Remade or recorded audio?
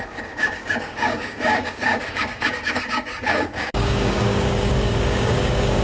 remade